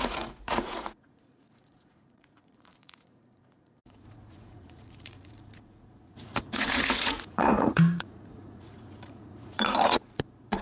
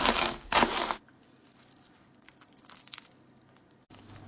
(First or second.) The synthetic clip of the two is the first